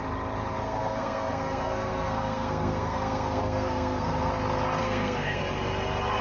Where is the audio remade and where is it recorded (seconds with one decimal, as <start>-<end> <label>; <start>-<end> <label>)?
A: 0.0-0.6 recorded; 0.6-4.3 remade; 4.3-4.8 recorded; 4.8-5.4 remade; 5.4-6.2 recorded